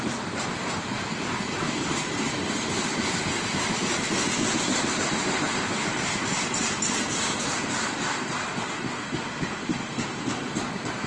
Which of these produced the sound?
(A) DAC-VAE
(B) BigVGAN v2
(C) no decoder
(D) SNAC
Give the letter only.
B